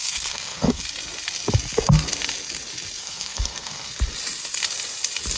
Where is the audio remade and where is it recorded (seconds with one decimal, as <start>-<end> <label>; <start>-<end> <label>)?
0.0-0.8 remade; 0.8-3.0 recorded; 3.0-3.9 remade; 3.9-5.4 recorded